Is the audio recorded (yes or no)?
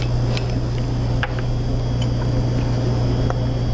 yes